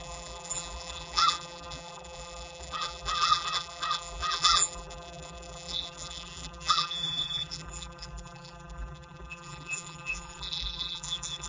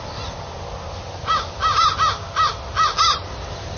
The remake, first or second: first